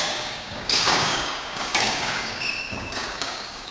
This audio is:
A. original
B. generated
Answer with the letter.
B